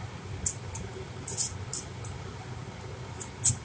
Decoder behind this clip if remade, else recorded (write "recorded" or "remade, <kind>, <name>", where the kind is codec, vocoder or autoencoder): recorded